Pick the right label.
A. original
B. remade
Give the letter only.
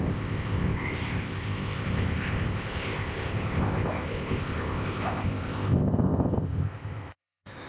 B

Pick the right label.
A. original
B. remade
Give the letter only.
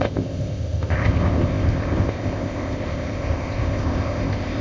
B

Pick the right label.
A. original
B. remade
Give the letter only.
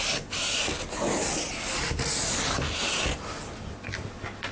A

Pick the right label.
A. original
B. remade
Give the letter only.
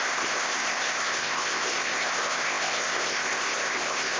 B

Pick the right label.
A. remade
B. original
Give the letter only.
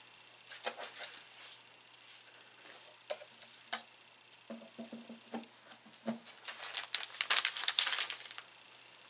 B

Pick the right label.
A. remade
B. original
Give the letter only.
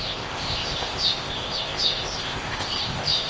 A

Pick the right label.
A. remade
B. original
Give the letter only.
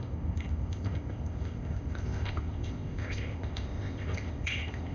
A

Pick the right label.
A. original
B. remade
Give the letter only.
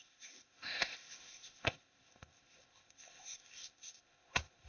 B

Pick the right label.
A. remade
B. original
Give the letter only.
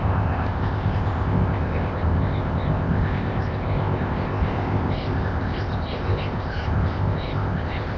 A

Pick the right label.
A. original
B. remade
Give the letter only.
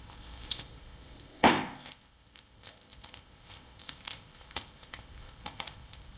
B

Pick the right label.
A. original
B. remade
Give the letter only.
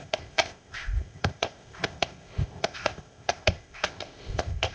B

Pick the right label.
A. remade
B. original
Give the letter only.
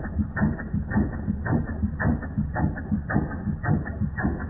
B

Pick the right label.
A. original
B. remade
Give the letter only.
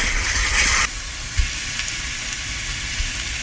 A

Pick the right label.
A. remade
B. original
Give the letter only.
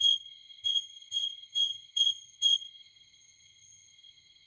A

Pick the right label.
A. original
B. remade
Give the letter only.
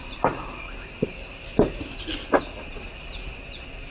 A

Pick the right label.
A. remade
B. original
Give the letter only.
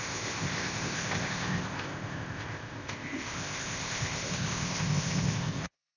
A